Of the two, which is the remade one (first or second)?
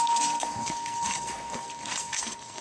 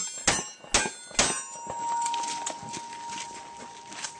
first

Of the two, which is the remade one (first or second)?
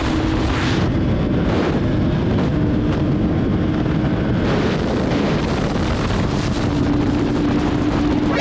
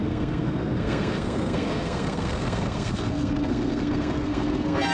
second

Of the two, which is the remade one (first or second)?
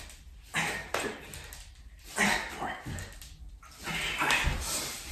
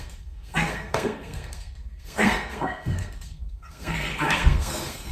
second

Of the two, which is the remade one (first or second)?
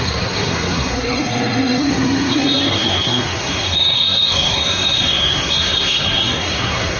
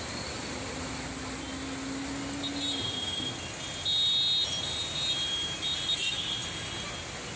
first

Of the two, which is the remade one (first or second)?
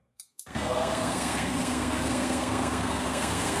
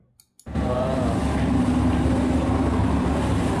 first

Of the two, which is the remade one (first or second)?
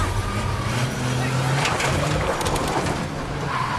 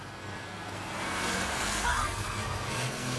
second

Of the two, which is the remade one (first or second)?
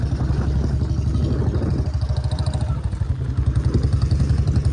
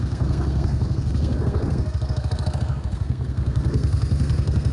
second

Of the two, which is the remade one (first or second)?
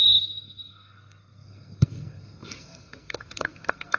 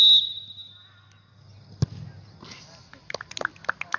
first